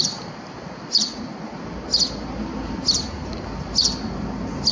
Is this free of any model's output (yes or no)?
yes